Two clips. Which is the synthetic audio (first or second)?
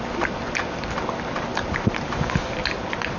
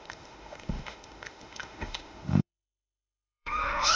second